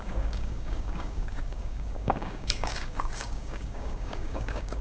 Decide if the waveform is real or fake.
fake